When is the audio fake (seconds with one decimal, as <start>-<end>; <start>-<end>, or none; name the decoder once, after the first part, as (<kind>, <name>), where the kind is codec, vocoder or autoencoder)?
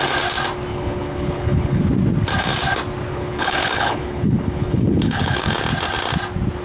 0.7-1.8 (codec, HILCodec); 3.1-5.5